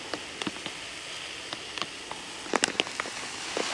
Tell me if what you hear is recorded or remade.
recorded